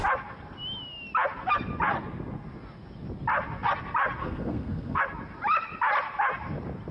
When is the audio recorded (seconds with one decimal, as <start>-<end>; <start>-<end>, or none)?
0.0-4.2; 5.0-6.9